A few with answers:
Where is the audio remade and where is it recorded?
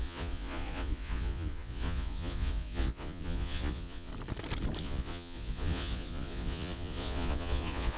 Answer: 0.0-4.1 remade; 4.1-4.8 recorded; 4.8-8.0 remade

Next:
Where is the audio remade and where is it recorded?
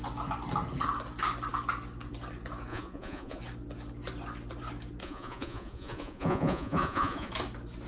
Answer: 0.0-2.7 recorded; 2.7-3.4 remade; 3.4-5.0 recorded; 5.0-7.3 remade; 7.3-7.9 recorded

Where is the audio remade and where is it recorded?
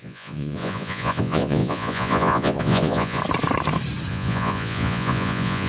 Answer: 0.0-3.2 remade; 3.2-4.1 recorded; 4.1-5.7 remade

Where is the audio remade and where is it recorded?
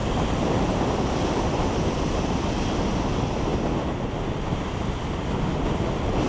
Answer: 0.0-6.3 recorded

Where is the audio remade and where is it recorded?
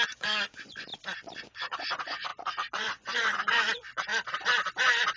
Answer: 0.0-0.9 remade; 0.9-1.4 recorded; 1.4-4.1 remade; 4.1-5.2 recorded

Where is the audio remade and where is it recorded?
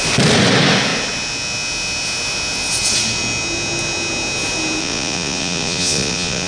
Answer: 0.0-4.8 recorded; 4.8-6.5 remade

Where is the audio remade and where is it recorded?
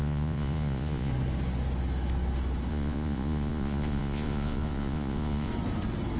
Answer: 0.0-1.1 remade; 1.1-2.7 recorded; 2.7-5.5 remade; 5.5-6.2 recorded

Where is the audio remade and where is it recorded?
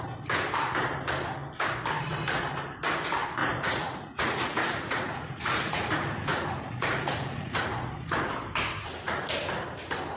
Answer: 0.0-3.4 recorded; 3.4-8.3 remade; 8.3-10.2 recorded